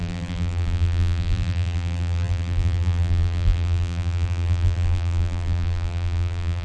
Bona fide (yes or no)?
no